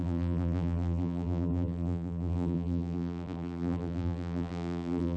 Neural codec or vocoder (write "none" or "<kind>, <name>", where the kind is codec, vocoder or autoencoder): vocoder, BigVGAN v2